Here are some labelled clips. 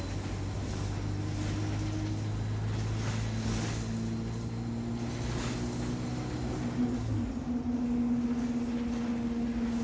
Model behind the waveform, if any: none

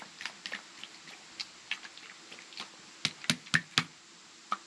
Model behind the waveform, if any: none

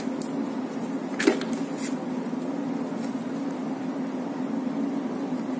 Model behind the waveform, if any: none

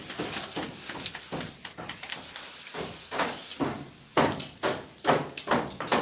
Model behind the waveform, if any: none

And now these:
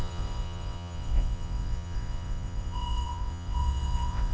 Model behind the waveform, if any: vocoder, WaveNeXt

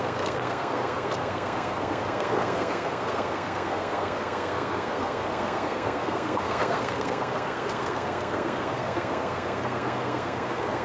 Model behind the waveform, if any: codec, SNAC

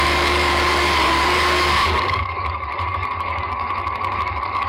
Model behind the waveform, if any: codec, DAC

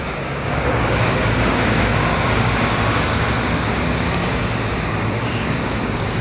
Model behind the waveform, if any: codec, DAC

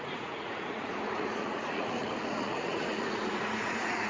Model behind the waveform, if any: vocoder, Vocos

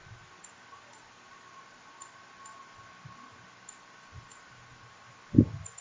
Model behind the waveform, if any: none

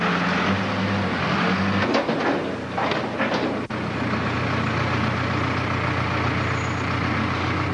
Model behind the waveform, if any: none